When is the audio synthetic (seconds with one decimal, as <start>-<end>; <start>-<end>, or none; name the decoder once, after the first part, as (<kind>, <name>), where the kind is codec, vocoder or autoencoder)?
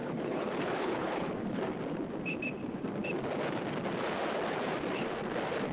0.0-1.6 (codec, HILCodec)